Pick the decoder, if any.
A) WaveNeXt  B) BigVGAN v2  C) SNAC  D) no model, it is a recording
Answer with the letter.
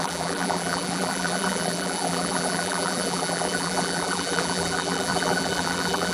B